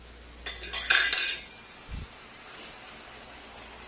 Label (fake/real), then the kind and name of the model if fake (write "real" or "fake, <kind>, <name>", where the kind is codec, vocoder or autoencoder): real